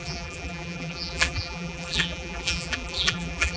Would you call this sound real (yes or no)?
no